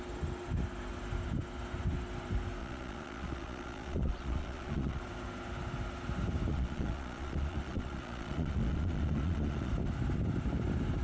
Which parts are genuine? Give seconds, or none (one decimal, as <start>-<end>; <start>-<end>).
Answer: 0.0-2.6; 5.0-6.5; 9.7-11.0